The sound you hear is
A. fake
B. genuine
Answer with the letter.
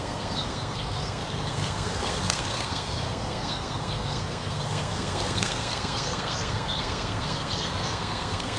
A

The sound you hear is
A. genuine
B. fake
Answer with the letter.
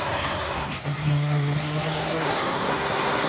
B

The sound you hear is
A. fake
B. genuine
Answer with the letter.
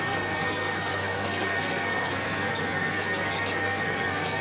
A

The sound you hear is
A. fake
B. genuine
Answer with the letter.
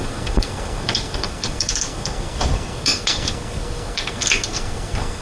A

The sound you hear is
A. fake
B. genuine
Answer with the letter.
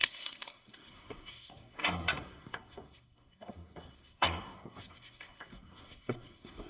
A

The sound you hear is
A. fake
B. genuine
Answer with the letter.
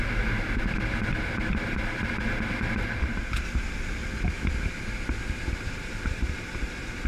B